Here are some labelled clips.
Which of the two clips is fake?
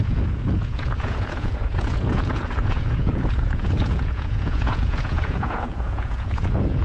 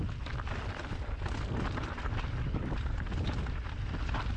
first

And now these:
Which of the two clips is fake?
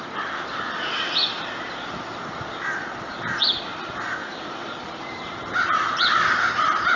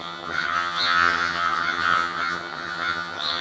second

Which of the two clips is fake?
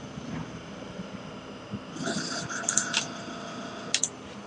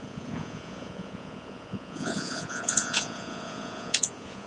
second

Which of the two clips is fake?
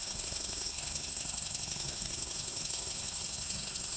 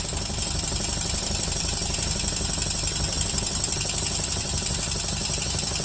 first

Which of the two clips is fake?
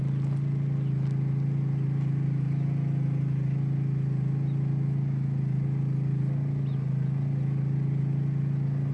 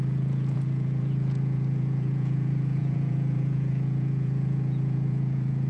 second